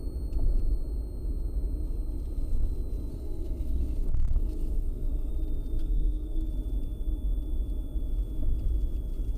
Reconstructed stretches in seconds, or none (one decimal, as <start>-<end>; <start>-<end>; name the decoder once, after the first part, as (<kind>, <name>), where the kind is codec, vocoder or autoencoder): 3.1-5.3 (codec, SNAC); 5.8-6.5